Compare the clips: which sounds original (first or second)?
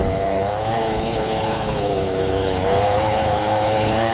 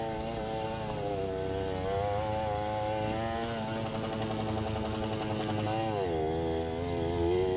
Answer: second